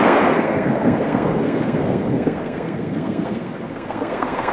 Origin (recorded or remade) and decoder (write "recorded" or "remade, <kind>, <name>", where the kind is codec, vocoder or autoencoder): remade, codec, SNAC